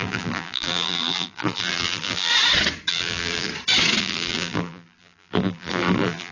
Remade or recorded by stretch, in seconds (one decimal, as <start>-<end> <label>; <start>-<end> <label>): 0.0-2.3 remade; 2.3-2.9 recorded; 2.9-3.5 remade; 3.5-4.0 recorded; 4.0-6.3 remade